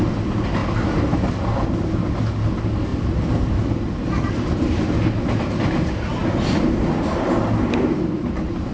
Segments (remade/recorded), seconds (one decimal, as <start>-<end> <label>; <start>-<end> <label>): 0.0-8.7 recorded